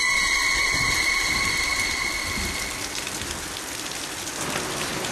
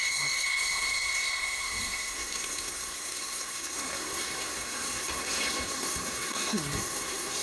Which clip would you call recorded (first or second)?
first